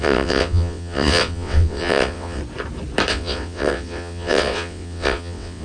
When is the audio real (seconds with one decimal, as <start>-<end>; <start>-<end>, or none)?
2.4-3.1